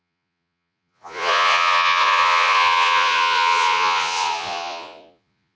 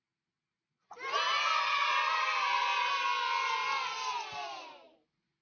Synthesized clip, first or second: first